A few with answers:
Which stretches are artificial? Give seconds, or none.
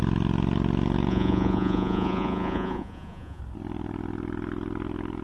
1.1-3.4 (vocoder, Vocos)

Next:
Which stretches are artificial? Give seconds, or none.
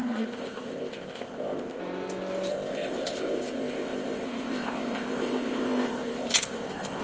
0.0-1.8 (codec, ZipCodec); 2.5-7.0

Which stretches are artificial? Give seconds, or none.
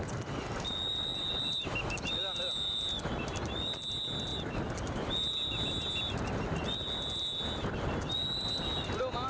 none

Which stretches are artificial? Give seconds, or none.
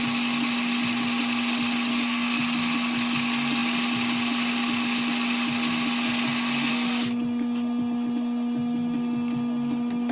1.9-2.4 (codec, SNAC)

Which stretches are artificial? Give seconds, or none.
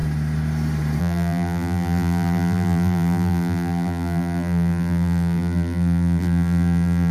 1.0-7.1 (vocoder, BigVGAN v2)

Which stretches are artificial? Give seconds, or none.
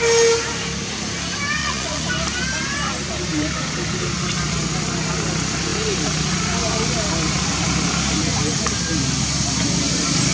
1.6-2.1 (vocoder, Vocos)